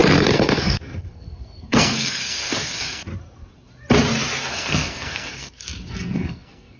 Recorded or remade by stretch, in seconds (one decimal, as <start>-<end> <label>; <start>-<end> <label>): 0.0-3.1 remade; 3.1-4.5 recorded; 4.5-6.8 remade